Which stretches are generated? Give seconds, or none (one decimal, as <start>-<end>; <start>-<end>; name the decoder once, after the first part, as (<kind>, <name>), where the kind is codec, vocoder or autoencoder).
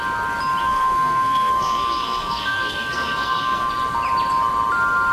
0.6-3.7 (codec, SNAC)